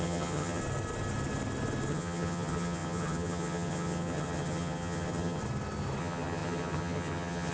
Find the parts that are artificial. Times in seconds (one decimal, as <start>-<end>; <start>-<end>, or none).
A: 0.0-0.6; 1.9-5.4; 6.0-7.5